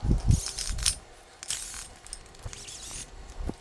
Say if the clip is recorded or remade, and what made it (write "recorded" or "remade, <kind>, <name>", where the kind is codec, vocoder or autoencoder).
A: recorded